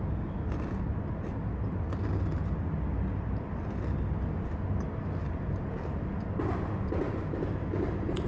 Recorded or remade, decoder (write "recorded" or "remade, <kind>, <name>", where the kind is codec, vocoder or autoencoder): recorded